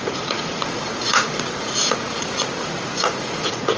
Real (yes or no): no